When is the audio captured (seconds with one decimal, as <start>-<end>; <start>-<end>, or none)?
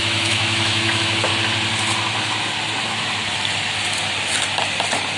1.3-2.8; 3.2-5.2